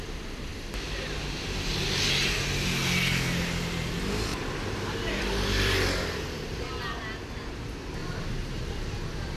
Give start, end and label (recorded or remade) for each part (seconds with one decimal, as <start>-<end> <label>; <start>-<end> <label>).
0.0-4.3 recorded; 4.3-6.9 remade; 6.9-8.0 recorded; 8.0-8.6 remade; 8.6-9.4 recorded